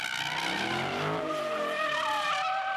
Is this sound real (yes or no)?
yes